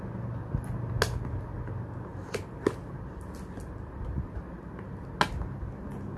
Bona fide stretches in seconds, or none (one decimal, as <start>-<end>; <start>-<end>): 0.0-6.2